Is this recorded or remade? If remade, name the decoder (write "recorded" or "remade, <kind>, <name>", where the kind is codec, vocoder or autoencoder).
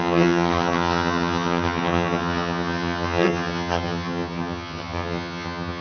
remade, vocoder, HiFi-GAN